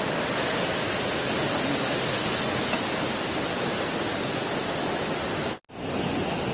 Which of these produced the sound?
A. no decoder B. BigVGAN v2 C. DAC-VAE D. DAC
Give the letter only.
A